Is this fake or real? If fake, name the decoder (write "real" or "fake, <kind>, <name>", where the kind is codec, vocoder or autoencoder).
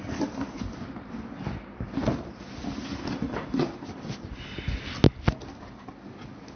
real